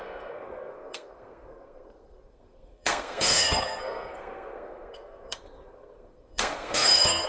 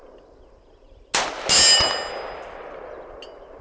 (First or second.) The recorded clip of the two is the second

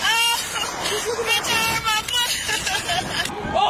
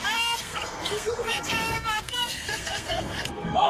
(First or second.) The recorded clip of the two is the first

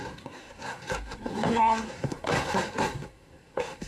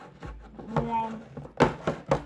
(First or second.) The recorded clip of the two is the second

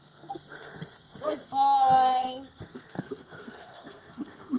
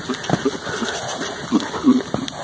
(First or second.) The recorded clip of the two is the second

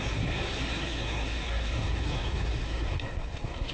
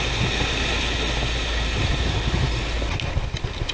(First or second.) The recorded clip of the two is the second